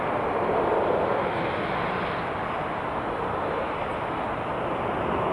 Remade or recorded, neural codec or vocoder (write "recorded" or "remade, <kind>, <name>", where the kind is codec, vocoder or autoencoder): recorded